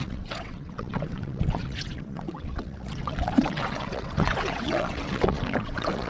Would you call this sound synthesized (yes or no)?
yes